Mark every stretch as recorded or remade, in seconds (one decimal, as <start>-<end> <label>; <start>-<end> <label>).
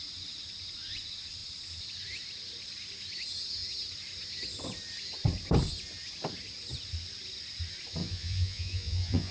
0.0-8.0 recorded; 8.0-9.3 remade